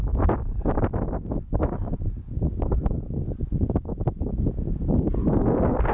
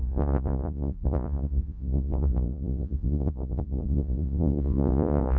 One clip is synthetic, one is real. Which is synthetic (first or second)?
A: second